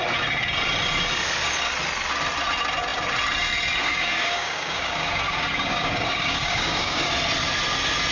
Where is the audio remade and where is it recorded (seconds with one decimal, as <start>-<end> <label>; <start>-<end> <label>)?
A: 0.0-3.8 recorded; 3.8-7.1 remade; 7.1-8.1 recorded